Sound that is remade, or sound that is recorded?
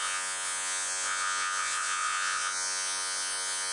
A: remade